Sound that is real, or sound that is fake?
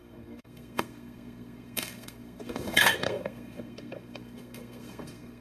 fake